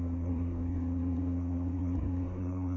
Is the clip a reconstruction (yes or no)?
yes